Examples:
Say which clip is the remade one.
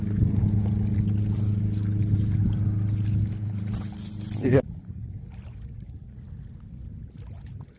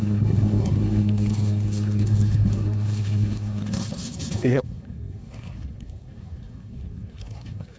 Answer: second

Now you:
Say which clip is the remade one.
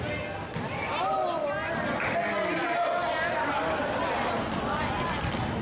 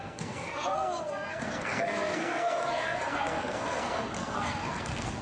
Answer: second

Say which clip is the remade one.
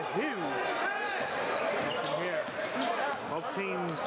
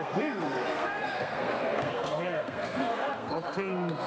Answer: second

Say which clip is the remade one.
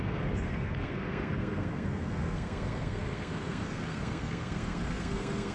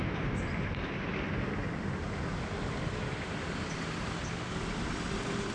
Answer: first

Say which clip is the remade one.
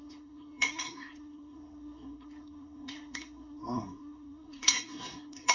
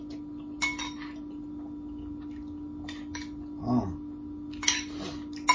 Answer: first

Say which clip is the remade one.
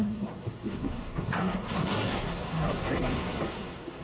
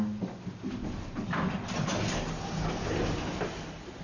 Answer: first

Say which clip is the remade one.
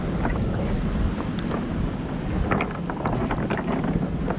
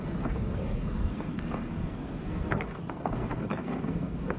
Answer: second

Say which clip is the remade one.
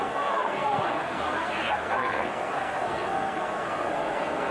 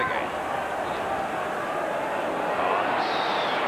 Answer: first